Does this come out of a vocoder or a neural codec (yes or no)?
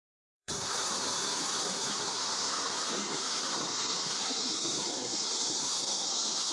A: yes